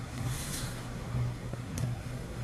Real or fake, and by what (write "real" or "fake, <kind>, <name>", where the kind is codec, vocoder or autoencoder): fake, codec, SNAC